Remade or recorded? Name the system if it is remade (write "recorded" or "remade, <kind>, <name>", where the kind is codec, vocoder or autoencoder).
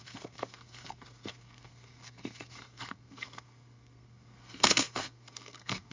remade, codec, SNAC